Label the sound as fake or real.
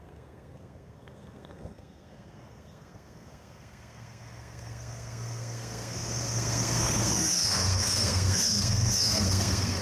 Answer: fake